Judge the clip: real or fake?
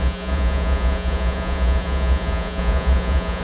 fake